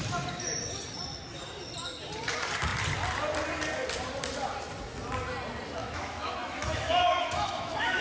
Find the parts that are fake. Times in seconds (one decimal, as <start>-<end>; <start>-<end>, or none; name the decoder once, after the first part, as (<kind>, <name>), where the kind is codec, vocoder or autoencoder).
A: 5.8-8.0 (autoencoder, DAC-VAE)